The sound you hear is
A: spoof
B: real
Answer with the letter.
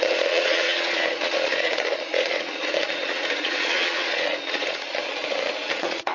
A